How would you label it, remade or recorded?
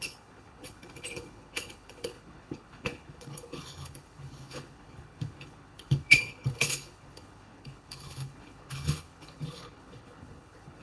remade